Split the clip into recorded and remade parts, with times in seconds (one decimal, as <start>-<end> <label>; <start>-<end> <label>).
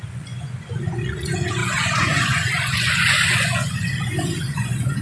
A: 0.0-5.0 remade